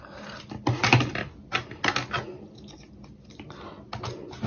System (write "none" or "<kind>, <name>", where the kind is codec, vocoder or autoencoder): none